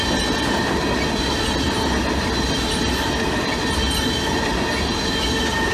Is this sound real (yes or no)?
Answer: yes